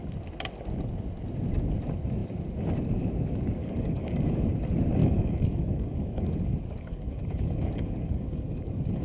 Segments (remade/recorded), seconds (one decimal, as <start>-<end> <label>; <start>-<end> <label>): 0.0-3.6 recorded; 3.6-4.5 remade; 4.5-5.0 recorded; 5.0-9.0 remade